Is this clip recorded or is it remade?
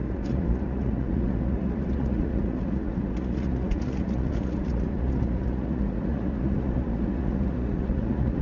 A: remade